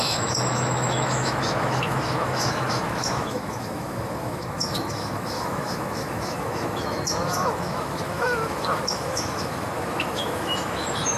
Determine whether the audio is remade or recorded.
remade